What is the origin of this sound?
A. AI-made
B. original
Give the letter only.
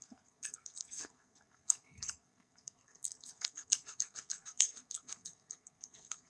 A